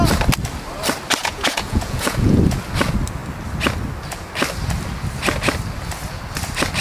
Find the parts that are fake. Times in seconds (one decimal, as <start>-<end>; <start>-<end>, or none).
1.2-2.4